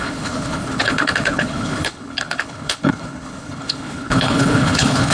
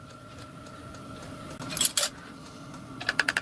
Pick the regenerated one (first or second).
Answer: first